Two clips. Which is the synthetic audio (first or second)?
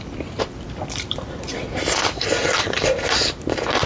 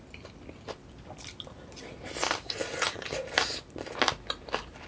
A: first